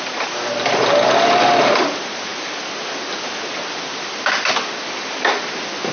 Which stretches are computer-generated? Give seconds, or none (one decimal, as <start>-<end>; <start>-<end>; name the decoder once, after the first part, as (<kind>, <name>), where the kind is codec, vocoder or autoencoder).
none

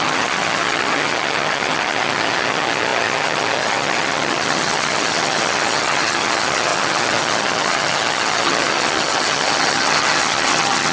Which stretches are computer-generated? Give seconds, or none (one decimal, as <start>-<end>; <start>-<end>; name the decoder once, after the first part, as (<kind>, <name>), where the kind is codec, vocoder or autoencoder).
0.0-10.9 (vocoder, HiFi-GAN)

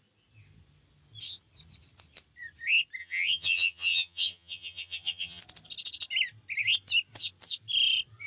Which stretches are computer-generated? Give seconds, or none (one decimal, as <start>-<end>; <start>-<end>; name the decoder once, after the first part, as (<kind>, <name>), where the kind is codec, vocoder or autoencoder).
3.0-5.4 (vocoder, HiFi-GAN)